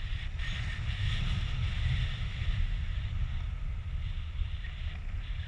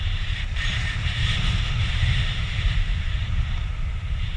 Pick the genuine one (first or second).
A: first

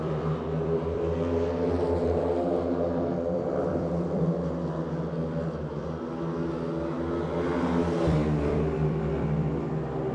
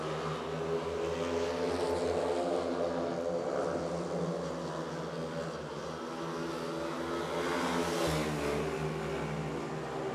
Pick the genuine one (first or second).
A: second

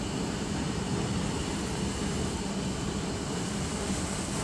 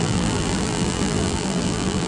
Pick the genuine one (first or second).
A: first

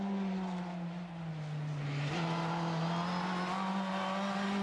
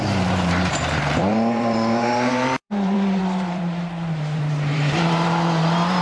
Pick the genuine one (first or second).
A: first